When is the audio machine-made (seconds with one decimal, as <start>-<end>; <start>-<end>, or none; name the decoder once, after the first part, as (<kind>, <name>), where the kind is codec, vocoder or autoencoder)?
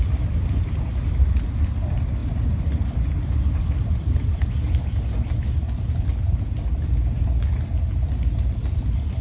none